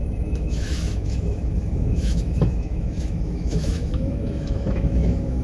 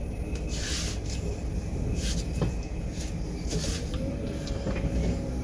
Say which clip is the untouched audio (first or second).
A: second